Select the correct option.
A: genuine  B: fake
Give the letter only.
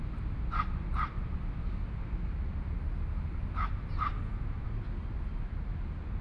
A